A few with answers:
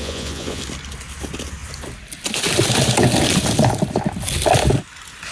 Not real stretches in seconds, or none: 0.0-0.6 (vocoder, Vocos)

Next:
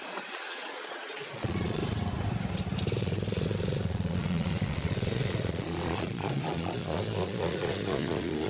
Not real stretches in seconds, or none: 0.0-1.8 (vocoder, Vocos); 3.0-8.5

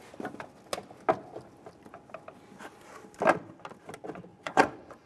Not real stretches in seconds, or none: 4.3-5.1 (vocoder, Vocos)

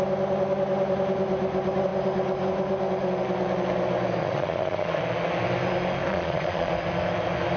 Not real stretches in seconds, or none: 4.2-5.0 (vocoder, Vocos); 6.1-6.7

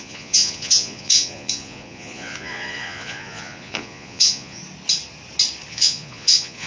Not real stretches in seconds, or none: 0.0-4.6 (vocoder, Vocos); 5.7-6.7

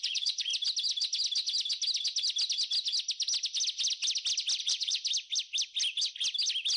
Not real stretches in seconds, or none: 0.0-0.5 (vocoder, Vocos); 4.6-5.0

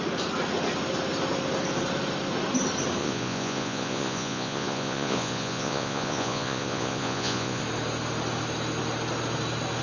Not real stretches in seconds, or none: 3.0-7.6 (vocoder, Vocos)